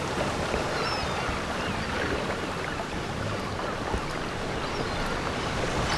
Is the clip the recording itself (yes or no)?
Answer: yes